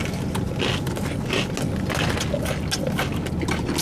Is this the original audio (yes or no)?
yes